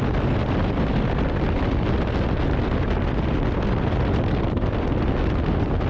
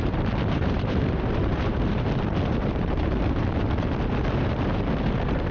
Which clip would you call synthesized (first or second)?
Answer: second